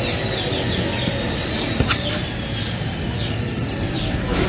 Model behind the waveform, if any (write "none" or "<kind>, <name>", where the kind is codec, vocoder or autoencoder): none